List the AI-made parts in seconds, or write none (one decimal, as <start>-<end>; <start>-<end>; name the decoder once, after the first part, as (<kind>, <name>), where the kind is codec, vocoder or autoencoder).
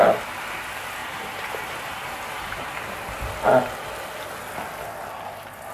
1.0-3.3 (vocoder, BigVGAN v2)